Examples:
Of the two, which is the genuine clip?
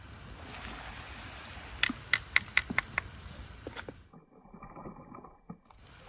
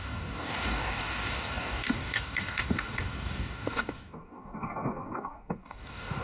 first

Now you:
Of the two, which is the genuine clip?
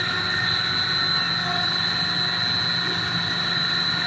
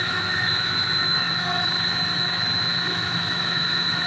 first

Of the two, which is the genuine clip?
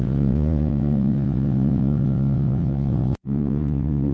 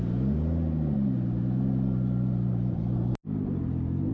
second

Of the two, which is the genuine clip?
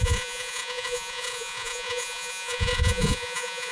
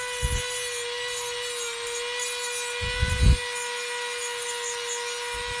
second